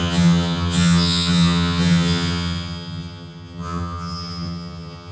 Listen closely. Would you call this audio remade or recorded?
remade